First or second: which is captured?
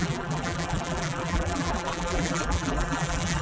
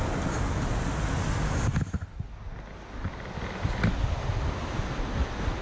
second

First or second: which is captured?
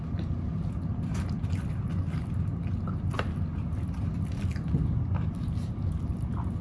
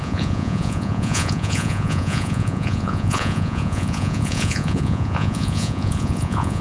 first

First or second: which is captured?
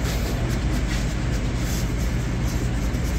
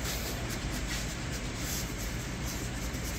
first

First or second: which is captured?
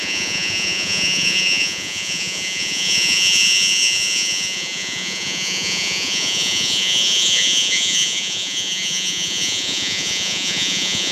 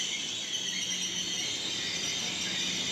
second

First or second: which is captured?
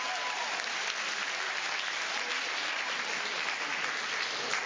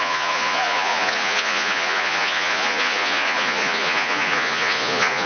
first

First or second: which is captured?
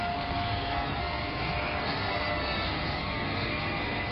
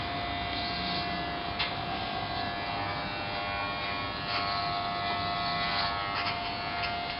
second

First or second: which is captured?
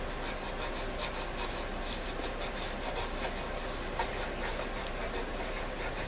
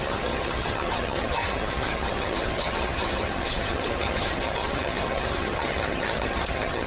first